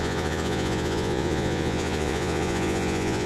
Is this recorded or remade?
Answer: remade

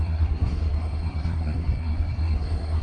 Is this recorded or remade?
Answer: remade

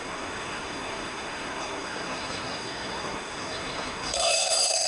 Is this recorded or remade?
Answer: remade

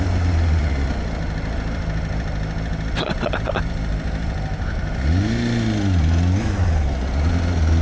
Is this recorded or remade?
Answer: recorded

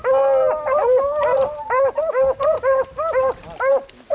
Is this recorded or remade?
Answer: recorded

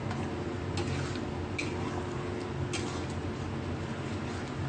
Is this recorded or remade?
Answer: recorded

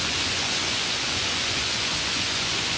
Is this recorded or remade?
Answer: remade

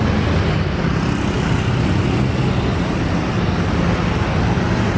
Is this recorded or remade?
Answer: recorded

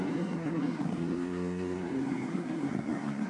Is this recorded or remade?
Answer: remade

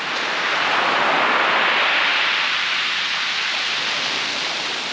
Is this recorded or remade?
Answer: recorded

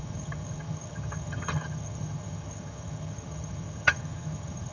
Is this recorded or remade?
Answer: remade